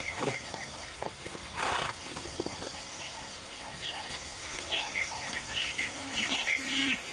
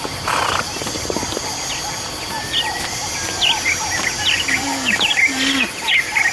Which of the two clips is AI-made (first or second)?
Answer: first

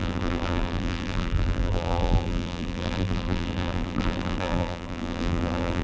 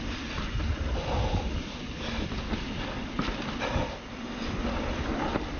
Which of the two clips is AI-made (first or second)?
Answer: first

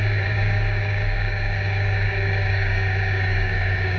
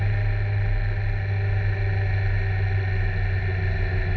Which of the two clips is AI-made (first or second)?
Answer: first